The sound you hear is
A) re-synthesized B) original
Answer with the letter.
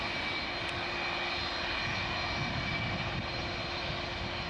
B